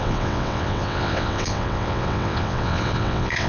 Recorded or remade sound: remade